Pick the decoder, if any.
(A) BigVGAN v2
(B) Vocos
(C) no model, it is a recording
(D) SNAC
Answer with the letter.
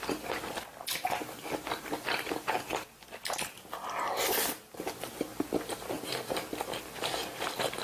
C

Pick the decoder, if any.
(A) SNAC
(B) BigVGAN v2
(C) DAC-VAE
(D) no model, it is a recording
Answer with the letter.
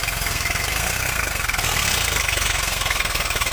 A